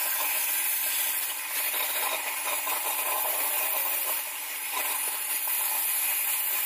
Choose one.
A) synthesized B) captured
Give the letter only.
B